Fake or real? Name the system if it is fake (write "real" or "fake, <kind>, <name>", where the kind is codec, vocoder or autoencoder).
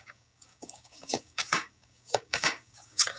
fake, codec, DAC